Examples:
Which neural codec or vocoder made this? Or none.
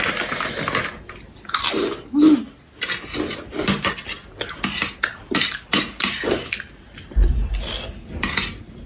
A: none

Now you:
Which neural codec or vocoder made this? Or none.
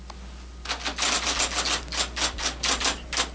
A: none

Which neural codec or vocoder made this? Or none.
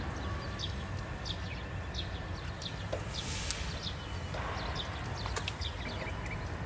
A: none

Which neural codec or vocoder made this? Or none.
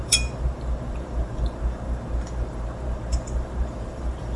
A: vocoder, BigVGAN v2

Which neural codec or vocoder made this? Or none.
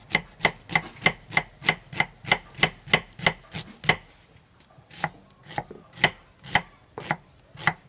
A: none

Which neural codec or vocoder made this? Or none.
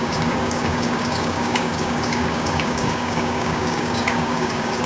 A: codec, DAC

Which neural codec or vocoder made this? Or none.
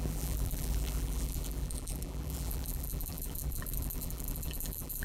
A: vocoder, BigVGAN v2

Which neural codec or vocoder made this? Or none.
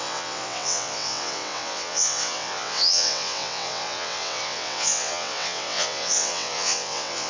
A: vocoder, WaveNeXt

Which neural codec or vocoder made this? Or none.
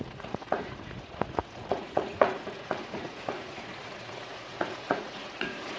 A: vocoder, Vocos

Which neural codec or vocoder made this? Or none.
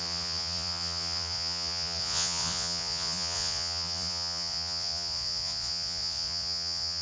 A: vocoder, Vocos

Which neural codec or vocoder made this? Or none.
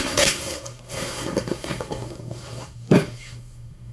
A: codec, SNAC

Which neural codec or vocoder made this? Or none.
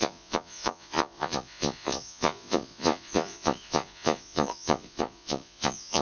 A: vocoder, Vocos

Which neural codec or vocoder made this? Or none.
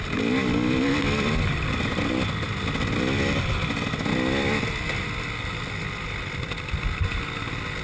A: none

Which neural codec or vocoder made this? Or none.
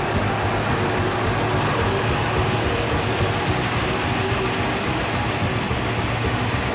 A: none